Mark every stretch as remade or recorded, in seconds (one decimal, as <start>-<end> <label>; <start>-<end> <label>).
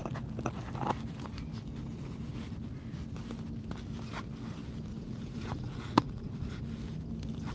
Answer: 0.0-4.9 recorded; 4.9-6.6 remade; 6.6-7.5 recorded